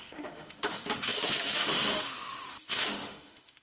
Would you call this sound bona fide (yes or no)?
no